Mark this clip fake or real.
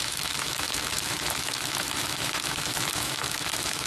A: fake